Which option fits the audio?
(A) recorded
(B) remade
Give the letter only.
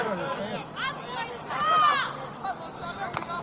A